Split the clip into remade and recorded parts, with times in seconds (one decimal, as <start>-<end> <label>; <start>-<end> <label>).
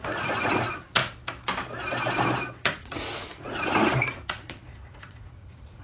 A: 0.0-1.0 remade; 1.0-2.6 recorded; 2.6-5.8 remade